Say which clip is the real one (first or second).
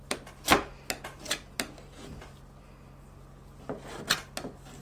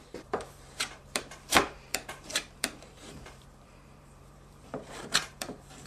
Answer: first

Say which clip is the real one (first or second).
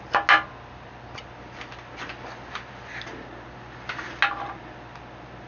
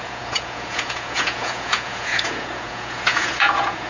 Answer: first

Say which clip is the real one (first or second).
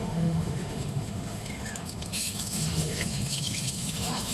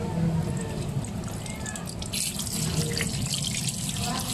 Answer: second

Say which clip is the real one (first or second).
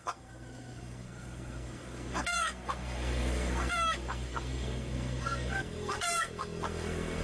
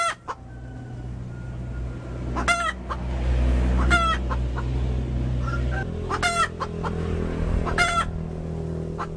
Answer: second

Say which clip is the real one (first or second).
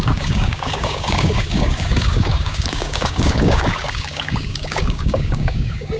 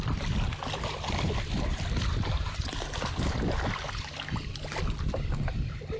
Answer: second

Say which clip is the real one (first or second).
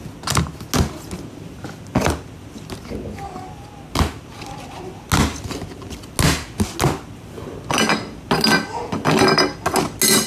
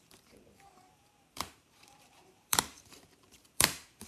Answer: first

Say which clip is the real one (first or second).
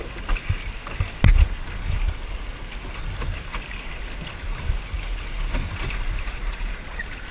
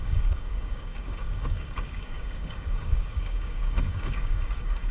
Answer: first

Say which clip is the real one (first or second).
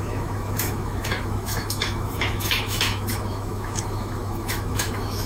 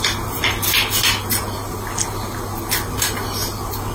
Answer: second